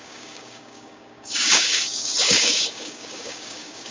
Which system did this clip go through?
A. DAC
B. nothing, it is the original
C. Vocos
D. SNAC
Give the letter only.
A